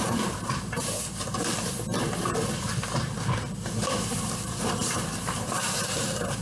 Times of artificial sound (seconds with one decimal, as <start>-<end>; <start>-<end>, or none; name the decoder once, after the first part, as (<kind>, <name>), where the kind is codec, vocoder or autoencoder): 0.0-1.9 (vocoder, BigVGAN v2); 4.2-6.4